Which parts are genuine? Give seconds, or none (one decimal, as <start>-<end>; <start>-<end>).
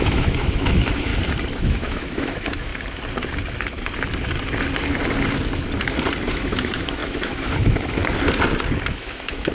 1.1-1.6; 2.7-6.3; 8.0-8.9